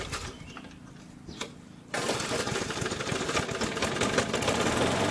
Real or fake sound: fake